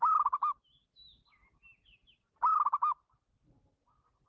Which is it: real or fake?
real